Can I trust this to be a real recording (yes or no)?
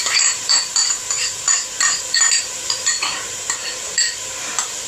no